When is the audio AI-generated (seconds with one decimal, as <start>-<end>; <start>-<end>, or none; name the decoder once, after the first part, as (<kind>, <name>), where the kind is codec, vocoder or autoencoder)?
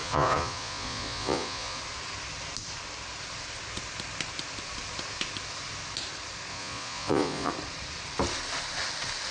0.0-1.8 (vocoder, Vocos); 6.5-7.5